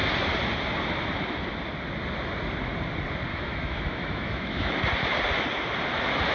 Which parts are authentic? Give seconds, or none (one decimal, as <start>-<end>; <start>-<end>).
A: 0.0-3.3; 4.7-6.3